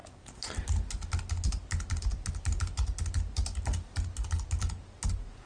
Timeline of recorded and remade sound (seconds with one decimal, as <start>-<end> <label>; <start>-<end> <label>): 0.0-5.5 recorded